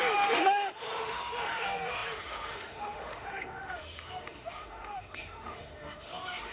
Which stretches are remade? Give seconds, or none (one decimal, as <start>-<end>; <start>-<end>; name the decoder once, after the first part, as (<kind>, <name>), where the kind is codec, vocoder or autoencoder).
0.0-6.5 (autoencoder, DAC-VAE)